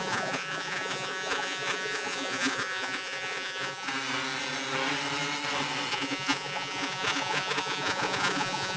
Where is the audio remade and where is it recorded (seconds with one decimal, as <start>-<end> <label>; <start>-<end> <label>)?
0.0-3.9 remade; 3.9-5.9 recorded; 5.9-8.8 remade